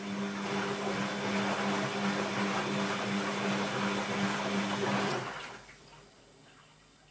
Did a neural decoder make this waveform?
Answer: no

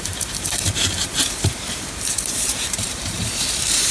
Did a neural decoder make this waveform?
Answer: yes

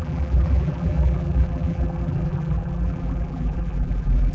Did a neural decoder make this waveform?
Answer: yes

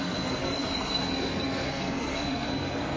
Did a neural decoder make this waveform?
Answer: yes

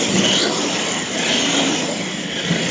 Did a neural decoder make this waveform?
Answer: no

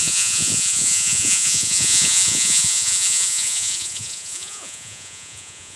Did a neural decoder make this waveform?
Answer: yes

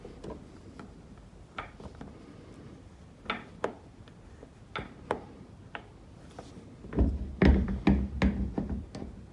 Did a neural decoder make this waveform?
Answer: no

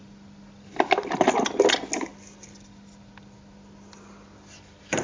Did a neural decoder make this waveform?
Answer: no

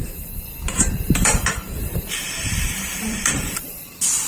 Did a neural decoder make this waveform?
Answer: yes